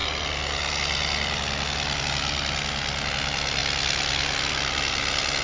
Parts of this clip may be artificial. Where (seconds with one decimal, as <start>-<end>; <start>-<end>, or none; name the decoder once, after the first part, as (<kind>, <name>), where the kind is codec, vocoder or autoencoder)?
none

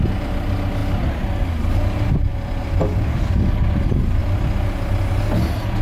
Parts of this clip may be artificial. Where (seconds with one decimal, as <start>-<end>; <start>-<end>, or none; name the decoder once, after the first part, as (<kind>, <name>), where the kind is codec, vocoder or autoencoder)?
none

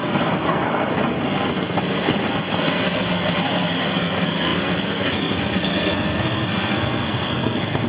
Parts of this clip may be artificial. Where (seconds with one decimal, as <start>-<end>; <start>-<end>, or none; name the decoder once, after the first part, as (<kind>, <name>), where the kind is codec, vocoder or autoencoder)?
0.0-7.9 (codec, SNAC)

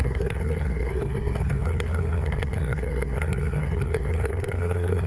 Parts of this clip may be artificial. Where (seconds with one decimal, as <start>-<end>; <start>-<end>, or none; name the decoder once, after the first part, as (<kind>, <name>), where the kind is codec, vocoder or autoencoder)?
0.0-5.1 (codec, SNAC)

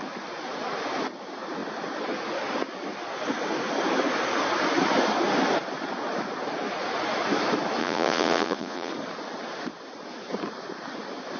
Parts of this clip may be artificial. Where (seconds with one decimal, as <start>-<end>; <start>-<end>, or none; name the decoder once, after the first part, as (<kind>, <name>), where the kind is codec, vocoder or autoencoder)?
7.8-8.9 (vocoder, Vocos)